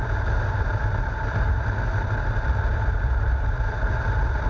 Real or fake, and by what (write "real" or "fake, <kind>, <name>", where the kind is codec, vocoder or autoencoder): real